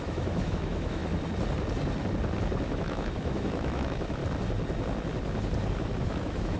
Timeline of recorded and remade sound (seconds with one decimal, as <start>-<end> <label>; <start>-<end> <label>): 0.0-1.0 remade; 1.0-2.6 recorded; 2.6-4.2 remade; 4.2-6.0 recorded; 6.0-6.6 remade